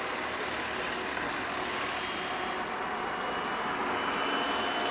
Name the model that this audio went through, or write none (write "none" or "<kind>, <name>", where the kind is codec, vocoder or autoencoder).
none